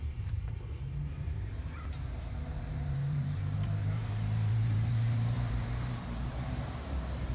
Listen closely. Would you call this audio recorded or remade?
remade